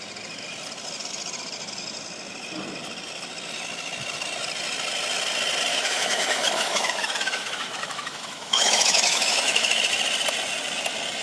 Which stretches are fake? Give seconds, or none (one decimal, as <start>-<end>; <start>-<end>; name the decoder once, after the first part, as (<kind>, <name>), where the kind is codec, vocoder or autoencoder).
5.7-9.8 (autoencoder, DAC-VAE)